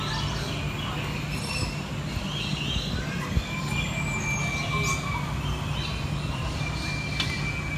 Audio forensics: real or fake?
real